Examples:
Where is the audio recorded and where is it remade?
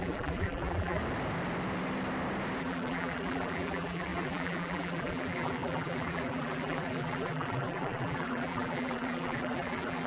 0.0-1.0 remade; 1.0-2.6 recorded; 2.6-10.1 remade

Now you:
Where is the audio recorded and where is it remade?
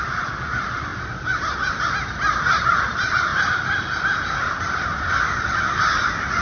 0.0-6.4 recorded